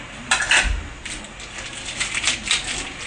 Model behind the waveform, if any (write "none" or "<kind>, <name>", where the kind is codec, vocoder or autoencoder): none